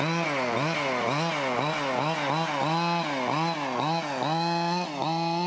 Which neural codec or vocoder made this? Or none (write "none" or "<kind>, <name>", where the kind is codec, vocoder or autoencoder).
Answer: none